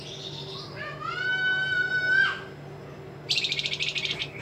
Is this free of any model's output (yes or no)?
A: yes